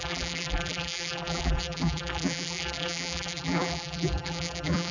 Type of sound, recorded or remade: remade